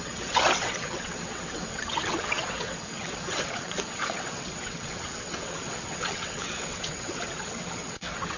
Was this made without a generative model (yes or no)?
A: no